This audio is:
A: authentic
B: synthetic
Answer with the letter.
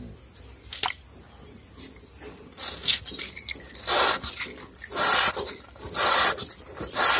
A